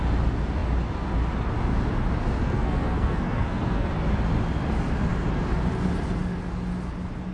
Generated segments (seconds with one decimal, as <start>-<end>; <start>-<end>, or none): 2.4-3.9